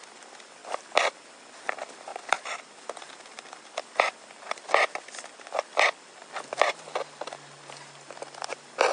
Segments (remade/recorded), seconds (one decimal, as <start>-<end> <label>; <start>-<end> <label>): 0.0-0.6 recorded; 0.6-1.4 remade; 1.4-2.1 recorded; 2.1-6.7 remade; 6.7-8.9 recorded